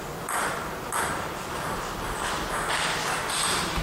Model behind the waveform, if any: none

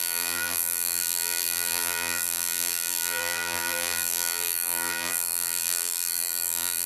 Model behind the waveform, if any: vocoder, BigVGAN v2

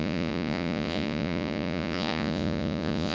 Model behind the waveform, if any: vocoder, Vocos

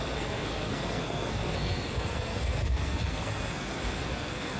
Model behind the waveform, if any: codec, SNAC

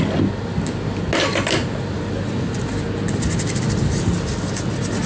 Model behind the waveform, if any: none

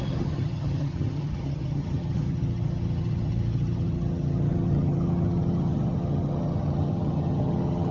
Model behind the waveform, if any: vocoder, HiFi-GAN